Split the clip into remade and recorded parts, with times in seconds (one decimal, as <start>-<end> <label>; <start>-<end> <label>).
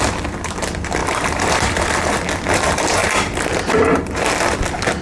0.0-1.0 recorded; 1.0-2.1 remade; 2.1-3.0 recorded; 3.0-4.3 remade; 4.3-5.0 recorded